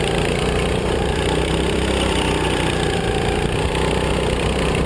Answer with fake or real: fake